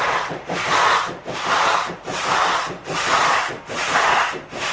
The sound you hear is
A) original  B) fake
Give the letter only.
A